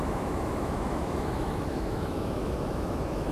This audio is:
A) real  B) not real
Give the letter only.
B